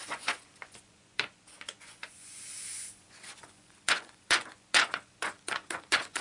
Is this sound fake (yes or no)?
yes